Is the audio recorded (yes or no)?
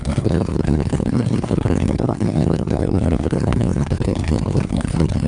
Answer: no